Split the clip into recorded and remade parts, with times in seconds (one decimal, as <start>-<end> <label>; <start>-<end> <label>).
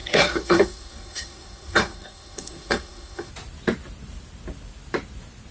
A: 0.0-3.3 remade; 3.3-5.5 recorded